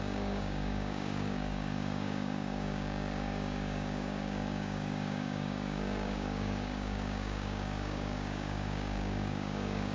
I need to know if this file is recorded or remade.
remade